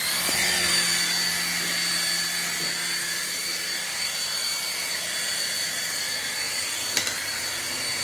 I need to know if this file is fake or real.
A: real